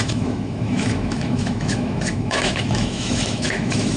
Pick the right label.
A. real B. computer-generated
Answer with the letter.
B